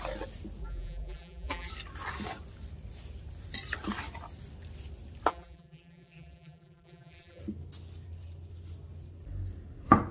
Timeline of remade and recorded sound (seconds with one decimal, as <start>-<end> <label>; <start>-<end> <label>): 0.0-0.6 recorded; 0.6-1.7 remade; 1.7-5.3 recorded; 5.3-7.4 remade; 7.4-10.1 recorded